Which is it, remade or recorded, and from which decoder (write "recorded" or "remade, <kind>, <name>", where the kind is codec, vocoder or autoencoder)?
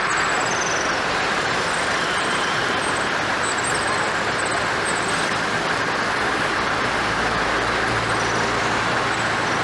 recorded